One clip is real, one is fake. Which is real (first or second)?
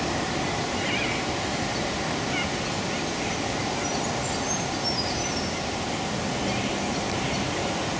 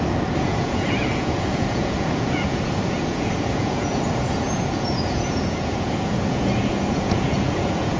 first